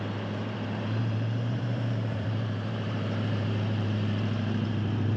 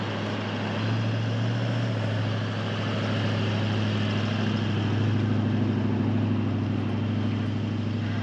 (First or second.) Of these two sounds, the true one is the second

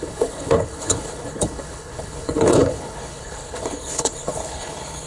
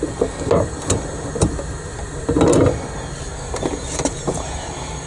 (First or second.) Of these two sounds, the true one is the second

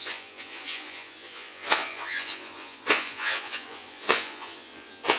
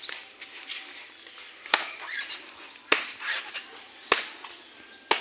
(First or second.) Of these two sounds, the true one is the second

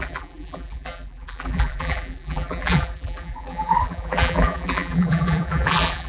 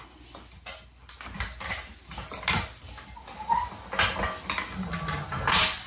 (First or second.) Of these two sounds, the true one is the second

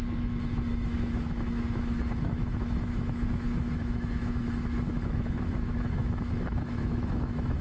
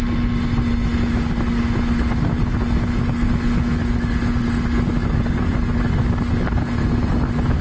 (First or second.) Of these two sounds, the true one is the second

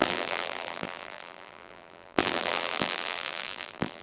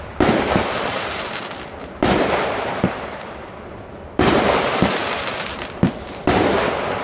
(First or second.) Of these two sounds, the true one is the second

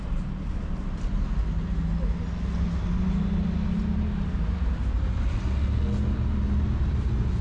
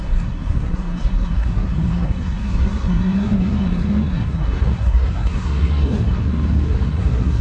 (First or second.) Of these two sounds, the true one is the first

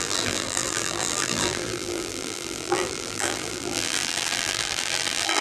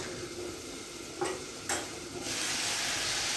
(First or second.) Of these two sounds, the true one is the second